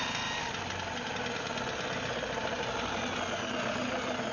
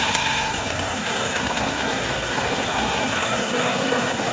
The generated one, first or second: second